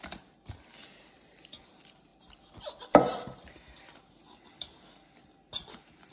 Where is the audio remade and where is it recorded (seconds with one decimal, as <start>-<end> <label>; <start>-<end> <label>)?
0.0-6.1 recorded